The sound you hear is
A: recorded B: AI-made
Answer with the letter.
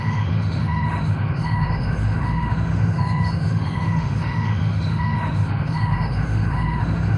B